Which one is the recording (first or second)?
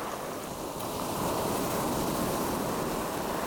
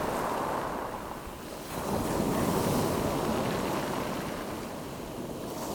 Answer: second